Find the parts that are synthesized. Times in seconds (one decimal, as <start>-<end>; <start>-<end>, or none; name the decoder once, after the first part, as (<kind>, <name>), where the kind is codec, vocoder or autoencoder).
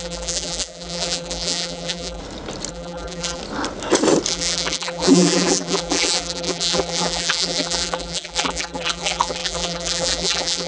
0.0-2.2 (vocoder, BigVGAN v2); 2.7-3.4; 4.3-10.7